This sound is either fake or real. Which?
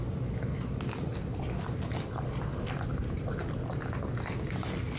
real